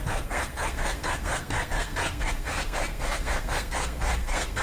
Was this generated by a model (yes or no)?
yes